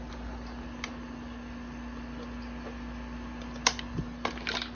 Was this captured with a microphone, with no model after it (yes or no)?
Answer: yes